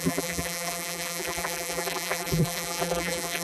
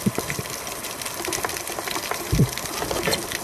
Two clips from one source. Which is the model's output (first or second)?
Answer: first